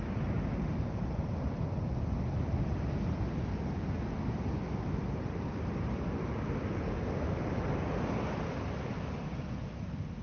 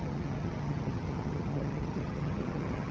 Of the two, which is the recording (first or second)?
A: first